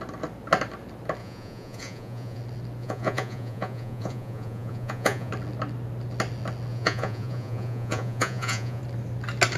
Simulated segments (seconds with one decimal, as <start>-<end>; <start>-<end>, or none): 1.2-2.4; 2.8-5.3; 6.7-8.8